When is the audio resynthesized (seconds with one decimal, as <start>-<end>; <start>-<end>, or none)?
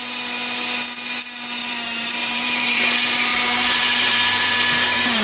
1.6-2.8; 3.3-4.5